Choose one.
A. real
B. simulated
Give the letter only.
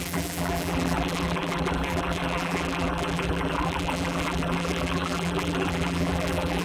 B